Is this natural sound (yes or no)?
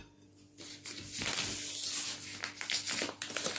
yes